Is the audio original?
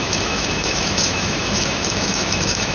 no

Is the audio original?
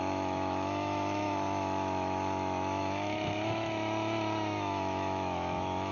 no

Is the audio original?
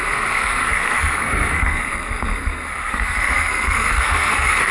no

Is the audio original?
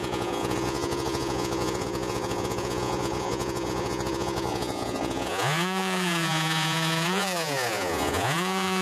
no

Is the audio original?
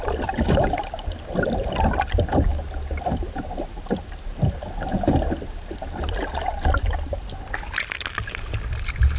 yes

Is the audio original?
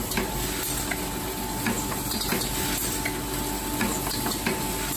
yes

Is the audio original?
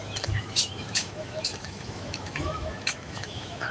no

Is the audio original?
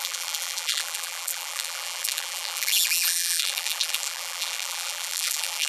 no